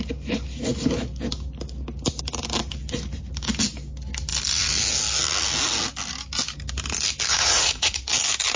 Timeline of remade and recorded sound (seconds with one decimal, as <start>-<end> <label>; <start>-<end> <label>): 0.0-7.3 recorded; 7.3-8.0 remade; 8.0-8.6 recorded